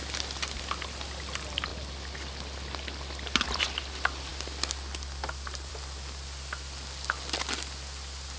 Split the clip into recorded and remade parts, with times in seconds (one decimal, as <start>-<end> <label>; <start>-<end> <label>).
0.0-8.4 recorded